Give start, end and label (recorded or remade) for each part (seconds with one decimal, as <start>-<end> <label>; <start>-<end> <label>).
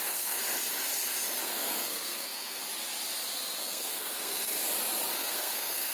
0.0-0.4 remade; 0.4-1.4 recorded; 1.4-2.6 remade; 2.6-3.6 recorded; 3.6-4.6 remade; 4.6-5.2 recorded; 5.2-5.9 remade